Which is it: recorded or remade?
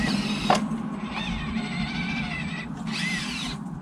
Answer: recorded